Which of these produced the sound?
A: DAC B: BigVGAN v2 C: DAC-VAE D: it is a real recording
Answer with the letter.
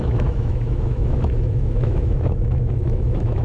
C